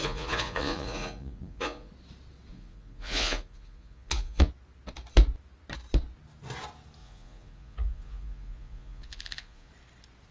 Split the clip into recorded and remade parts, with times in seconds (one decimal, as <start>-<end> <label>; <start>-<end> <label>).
0.0-1.9 remade; 1.9-2.5 recorded; 2.5-4.5 remade; 4.5-7.0 recorded; 7.0-9.7 remade; 9.7-10.3 recorded